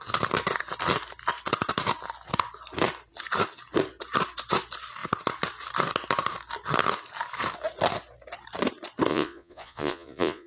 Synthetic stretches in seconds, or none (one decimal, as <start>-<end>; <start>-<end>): 9.1-10.5